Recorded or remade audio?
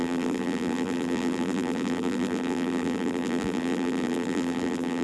remade